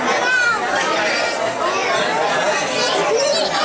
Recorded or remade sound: recorded